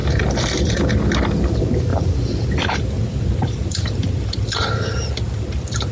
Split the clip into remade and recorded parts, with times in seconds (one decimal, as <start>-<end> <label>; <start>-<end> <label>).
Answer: 0.0-0.9 remade; 0.9-1.9 recorded; 1.9-4.9 remade; 4.9-5.9 recorded